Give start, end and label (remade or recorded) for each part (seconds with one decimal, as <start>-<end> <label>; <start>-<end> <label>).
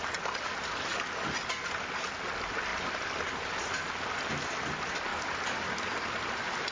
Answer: 0.0-6.7 recorded